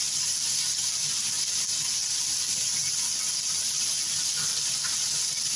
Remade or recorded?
recorded